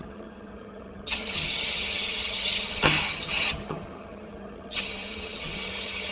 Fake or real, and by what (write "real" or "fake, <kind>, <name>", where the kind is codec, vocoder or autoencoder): fake, vocoder, HiFi-GAN